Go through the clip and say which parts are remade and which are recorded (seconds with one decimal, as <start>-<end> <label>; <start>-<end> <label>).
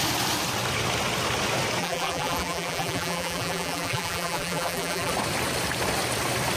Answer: 0.0-1.8 recorded; 1.8-5.1 remade; 5.1-6.6 recorded